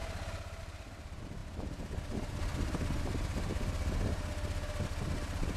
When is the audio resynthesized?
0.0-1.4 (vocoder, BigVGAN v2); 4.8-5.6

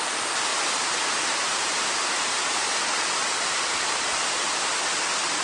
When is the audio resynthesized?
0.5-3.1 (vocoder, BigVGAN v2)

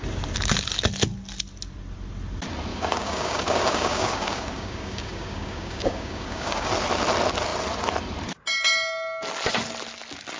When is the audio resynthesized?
2.7-6.7 (codec, DAC)